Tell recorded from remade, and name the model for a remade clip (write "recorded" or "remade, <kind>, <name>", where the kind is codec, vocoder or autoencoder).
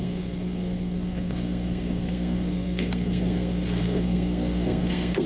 remade, codec, SNAC